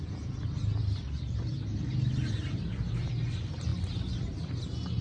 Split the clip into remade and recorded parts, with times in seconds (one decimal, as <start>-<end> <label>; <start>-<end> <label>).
0.0-5.0 recorded